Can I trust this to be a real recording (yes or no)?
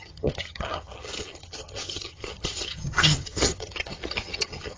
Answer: no